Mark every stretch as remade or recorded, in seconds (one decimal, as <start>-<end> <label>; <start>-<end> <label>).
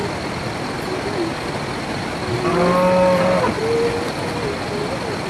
0.0-5.3 recorded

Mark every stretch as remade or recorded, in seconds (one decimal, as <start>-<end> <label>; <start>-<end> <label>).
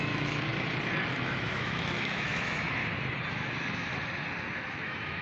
0.0-0.5 remade; 0.5-1.1 recorded; 1.1-2.8 remade; 2.8-3.3 recorded; 3.3-3.9 remade; 3.9-4.5 recorded; 4.5-5.2 remade